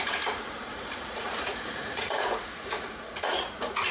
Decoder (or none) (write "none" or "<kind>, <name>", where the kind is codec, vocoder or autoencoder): vocoder, Vocos